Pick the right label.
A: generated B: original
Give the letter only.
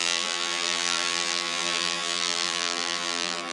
A